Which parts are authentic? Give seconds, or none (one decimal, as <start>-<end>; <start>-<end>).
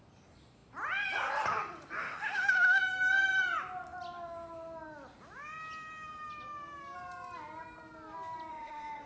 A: 0.0-2.0; 2.8-8.5